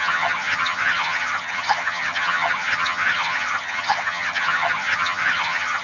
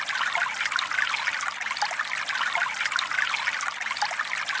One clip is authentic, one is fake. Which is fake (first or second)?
first